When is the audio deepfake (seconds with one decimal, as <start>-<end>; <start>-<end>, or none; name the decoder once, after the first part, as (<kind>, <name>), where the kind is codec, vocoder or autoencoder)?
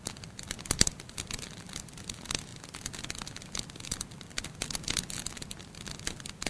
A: none